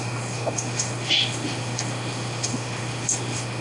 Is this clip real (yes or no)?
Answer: no